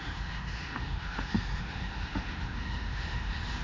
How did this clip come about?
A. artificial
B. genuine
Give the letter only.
A